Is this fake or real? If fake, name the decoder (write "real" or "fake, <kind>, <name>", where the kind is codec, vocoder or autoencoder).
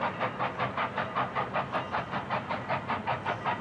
real